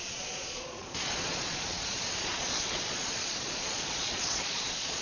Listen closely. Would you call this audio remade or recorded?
remade